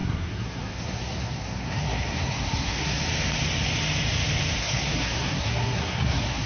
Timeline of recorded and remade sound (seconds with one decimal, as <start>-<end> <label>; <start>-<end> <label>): 0.0-3.0 remade; 3.0-4.6 recorded; 4.6-6.5 remade